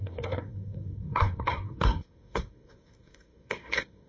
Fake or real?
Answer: fake